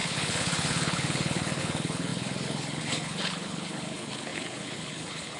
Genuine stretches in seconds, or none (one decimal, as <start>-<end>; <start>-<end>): none